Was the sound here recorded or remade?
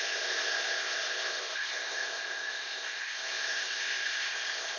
remade